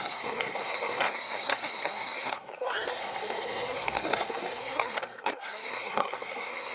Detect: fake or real fake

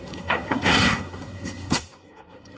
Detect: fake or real fake